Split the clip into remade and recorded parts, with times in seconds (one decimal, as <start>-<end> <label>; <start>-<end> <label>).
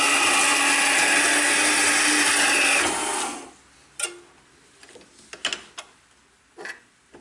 0.0-7.2 recorded